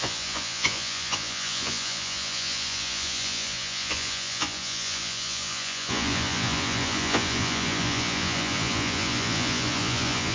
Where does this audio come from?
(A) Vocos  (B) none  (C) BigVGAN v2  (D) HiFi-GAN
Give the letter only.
A